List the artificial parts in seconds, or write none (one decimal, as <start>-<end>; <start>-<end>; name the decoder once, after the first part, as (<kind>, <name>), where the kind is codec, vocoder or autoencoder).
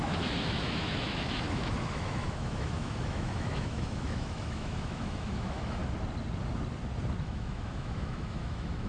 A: 0.0-5.8 (autoencoder, DAC-VAE); 7.2-8.9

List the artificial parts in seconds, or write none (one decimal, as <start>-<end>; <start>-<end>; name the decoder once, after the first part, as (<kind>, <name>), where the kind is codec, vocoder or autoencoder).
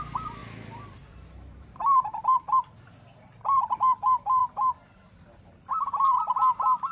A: 0.4-3.6 (vocoder, BigVGAN v2); 4.4-6.2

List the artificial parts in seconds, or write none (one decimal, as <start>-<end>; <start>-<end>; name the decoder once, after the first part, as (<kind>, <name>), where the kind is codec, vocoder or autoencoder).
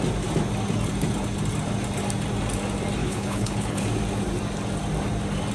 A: 3.0-3.8 (codec, HILCodec)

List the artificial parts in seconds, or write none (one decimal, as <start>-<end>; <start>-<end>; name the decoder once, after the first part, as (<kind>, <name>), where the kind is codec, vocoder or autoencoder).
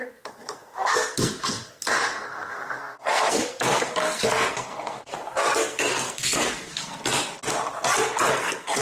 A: 0.0-7.0 (codec, SNAC); 8.3-8.8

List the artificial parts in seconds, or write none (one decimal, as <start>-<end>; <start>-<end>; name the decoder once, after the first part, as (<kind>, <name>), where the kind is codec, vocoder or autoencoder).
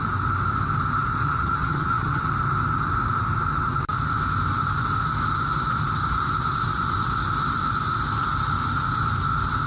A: 1.2-2.3 (vocoder, HiFi-GAN)